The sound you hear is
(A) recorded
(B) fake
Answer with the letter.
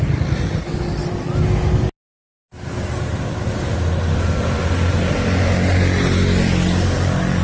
A